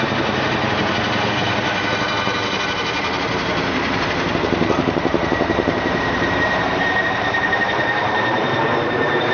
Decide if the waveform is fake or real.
fake